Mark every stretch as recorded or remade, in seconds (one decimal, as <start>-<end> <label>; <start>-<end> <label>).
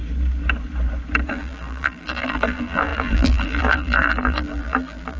0.0-1.3 recorded; 1.3-5.2 remade